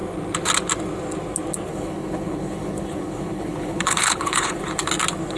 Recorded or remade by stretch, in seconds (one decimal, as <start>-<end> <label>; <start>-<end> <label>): 0.0-1.7 recorded; 1.7-4.6 remade; 4.6-5.4 recorded